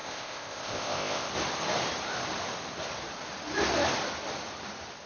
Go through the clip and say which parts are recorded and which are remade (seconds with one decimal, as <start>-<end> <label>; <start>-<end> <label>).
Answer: 0.0-1.3 remade; 1.3-5.1 recorded